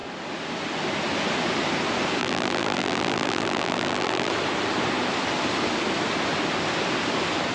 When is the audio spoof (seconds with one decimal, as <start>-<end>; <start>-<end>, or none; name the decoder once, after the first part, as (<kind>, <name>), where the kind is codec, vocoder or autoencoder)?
2.2-4.3 (vocoder, BigVGAN v2)